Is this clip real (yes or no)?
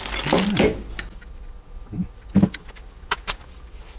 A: yes